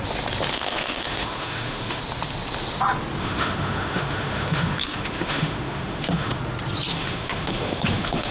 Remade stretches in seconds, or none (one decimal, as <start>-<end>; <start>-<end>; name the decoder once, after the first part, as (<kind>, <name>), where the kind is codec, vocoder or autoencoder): 0.5-2.0 (autoencoder, DAC-VAE); 3.2-6.4; 6.9-8.3